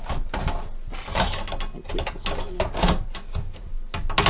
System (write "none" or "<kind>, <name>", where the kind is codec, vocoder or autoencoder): none